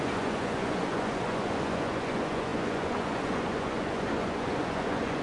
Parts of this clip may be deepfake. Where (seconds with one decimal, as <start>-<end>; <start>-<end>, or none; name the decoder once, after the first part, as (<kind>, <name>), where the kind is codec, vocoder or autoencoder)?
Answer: 0.0-5.2 (vocoder, Vocos)